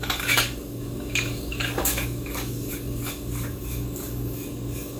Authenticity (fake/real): fake